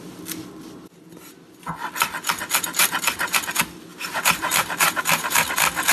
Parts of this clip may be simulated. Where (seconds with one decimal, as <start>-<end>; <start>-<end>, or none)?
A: 2.8-3.5; 3.9-5.5